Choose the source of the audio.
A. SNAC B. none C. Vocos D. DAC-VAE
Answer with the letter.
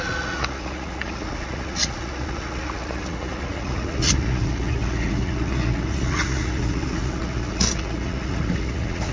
C